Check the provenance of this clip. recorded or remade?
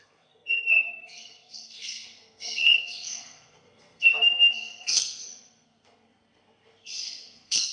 remade